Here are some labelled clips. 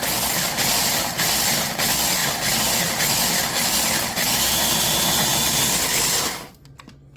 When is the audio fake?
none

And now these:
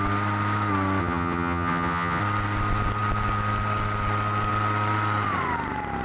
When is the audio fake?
1.0-2.2 (vocoder, HiFi-GAN)

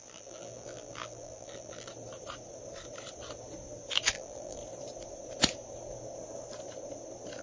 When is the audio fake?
0.0-1.9 (vocoder, BigVGAN v2); 4.1-4.6